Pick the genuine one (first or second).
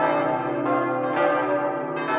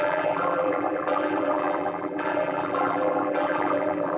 first